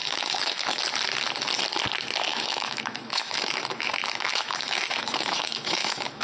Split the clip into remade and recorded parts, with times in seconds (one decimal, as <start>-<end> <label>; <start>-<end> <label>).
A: 0.0-0.8 remade; 0.8-2.3 recorded; 2.3-6.2 remade